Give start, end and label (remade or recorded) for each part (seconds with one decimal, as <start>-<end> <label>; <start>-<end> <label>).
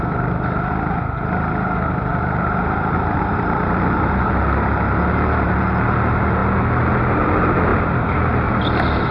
0.0-2.1 recorded; 2.1-4.3 remade; 4.3-7.7 recorded; 7.7-8.5 remade; 8.5-9.1 recorded